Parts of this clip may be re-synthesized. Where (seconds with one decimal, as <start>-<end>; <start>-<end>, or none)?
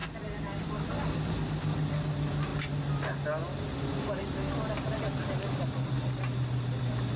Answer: none